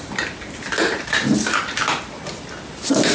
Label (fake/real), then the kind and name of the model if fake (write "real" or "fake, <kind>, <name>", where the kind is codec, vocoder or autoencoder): real